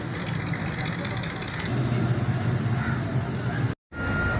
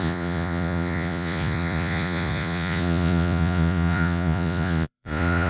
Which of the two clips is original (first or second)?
first